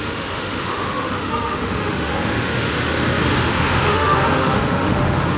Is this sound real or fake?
fake